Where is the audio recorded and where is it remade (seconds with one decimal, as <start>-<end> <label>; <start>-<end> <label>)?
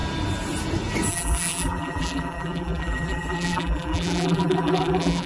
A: 0.0-1.1 recorded; 1.1-5.3 remade